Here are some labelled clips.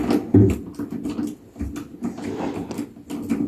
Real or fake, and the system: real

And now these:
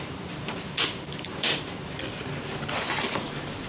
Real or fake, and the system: real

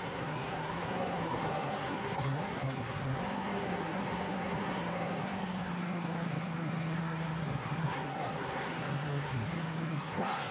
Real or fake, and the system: fake, codec, SNAC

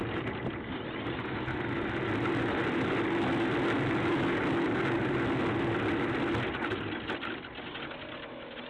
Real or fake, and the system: real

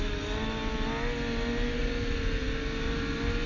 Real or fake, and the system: real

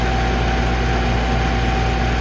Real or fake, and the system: real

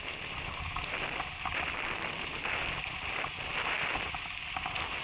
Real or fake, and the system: real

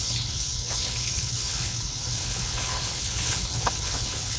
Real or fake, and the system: fake, codec, HILCodec